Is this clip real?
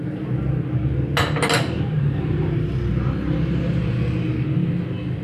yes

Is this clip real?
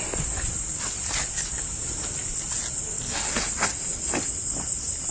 yes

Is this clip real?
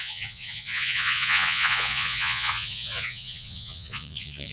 no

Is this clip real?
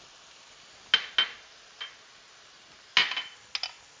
yes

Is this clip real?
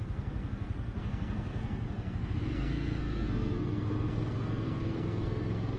no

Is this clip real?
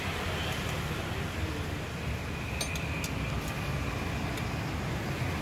yes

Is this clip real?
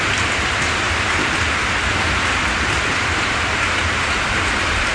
yes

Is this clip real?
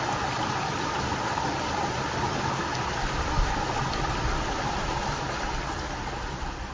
yes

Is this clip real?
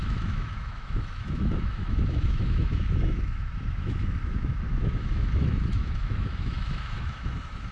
no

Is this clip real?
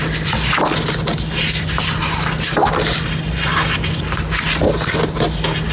yes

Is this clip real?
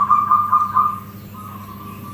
yes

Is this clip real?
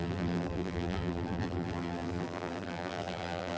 no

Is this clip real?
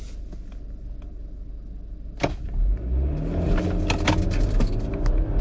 yes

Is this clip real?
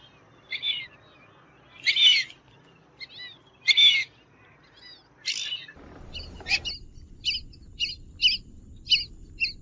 yes